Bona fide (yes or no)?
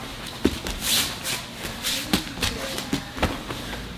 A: yes